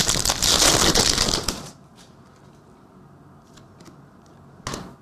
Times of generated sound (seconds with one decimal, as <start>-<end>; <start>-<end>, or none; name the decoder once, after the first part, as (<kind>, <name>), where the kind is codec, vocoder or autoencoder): 0.9-2.4 (vocoder, BigVGAN v2)